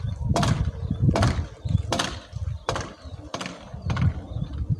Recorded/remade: remade